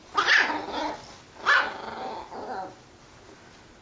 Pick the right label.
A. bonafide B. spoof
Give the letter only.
A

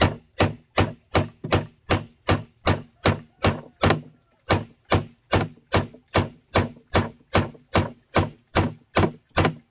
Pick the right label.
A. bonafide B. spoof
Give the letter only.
A